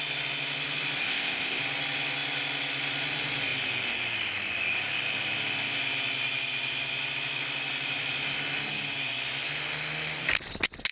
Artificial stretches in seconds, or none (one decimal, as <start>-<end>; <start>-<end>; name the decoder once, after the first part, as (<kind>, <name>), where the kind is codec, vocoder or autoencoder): 1.0-1.6 (codec, ZipCodec)